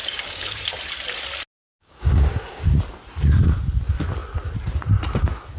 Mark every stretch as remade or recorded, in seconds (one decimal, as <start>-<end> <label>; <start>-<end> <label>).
0.0-0.6 remade; 0.6-1.6 recorded; 1.6-2.7 remade; 2.7-5.6 recorded